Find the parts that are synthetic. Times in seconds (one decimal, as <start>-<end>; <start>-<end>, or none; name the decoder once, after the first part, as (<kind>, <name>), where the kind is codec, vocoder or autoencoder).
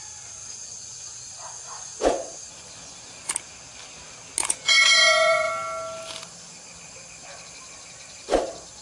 0.4-3.3 (vocoder, Vocos); 4.4-5.5